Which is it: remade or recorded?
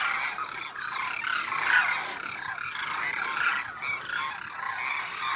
recorded